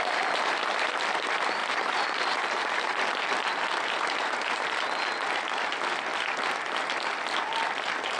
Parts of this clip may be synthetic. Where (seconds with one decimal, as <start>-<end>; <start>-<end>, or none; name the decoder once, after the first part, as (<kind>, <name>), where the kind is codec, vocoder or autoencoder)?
1.6-3.0 (vocoder, BigVGAN v2)